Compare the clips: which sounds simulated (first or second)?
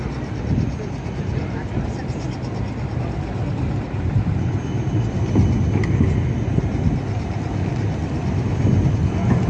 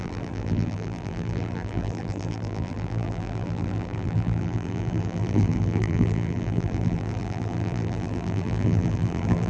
second